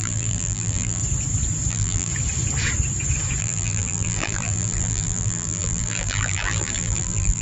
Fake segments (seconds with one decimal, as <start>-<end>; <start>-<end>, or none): 0.0-1.0; 1.7-2.1; 3.4-7.4